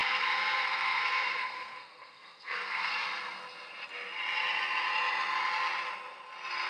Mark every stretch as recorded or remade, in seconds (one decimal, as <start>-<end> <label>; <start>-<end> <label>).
0.0-2.9 remade; 2.9-6.7 recorded